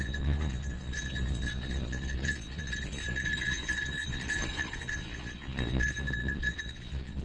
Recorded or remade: remade